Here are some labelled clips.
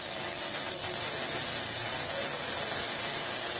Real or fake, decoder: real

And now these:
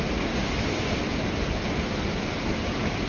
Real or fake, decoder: real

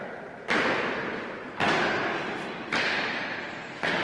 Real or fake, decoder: real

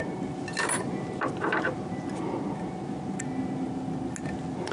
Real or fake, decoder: real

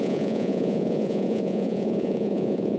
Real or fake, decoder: fake, vocoder, Vocos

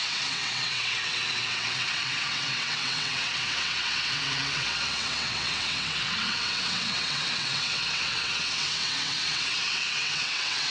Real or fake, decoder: fake, vocoder, WaveNeXt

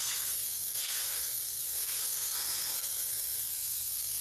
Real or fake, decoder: fake, codec, SNAC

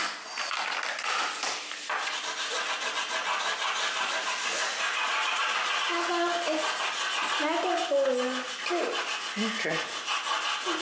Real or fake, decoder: real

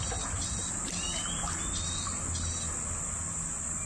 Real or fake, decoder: real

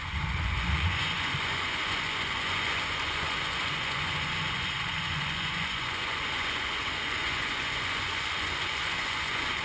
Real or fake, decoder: fake, vocoder, Vocos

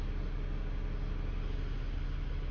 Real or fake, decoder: real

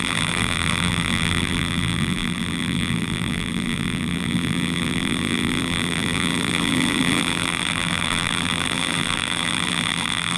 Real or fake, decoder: fake, vocoder, BigVGAN v2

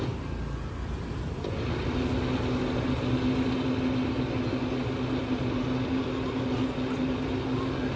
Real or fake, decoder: real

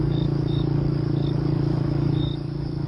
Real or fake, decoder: fake, codec, DAC